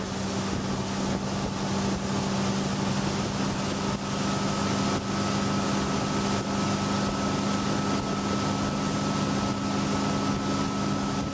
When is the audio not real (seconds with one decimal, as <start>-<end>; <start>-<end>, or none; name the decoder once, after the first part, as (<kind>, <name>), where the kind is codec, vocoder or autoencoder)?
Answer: none